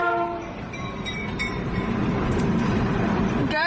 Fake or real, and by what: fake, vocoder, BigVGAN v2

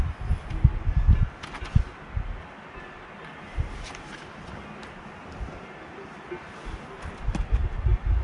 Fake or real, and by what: real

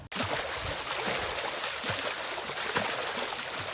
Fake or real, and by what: real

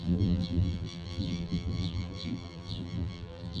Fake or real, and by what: fake, vocoder, BigVGAN v2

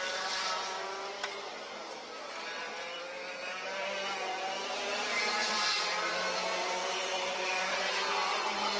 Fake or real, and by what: fake, vocoder, BigVGAN v2